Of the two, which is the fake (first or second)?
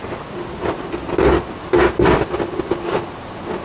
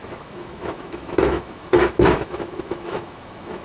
second